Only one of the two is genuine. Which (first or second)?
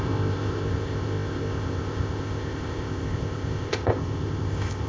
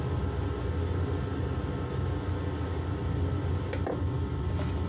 second